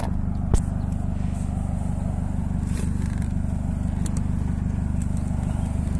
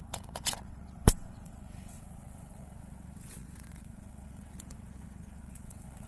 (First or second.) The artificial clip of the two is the second